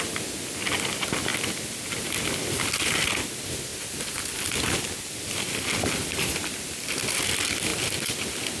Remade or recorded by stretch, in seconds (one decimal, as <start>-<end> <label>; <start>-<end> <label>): 0.0-8.6 recorded

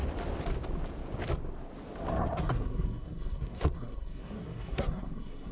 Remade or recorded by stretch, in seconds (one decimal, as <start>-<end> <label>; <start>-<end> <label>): 0.0-2.4 recorded; 2.4-5.5 remade

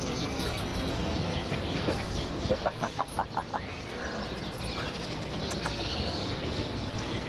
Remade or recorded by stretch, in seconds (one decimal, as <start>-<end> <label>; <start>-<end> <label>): 0.0-3.1 remade; 3.1-3.6 recorded; 3.6-4.0 remade; 4.0-4.9 recorded; 4.9-7.3 remade

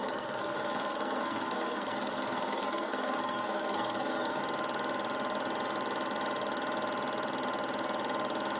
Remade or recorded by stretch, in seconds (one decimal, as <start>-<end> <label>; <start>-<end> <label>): 0.0-4.4 remade; 4.4-8.6 recorded